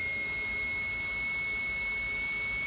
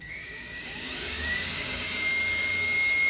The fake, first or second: second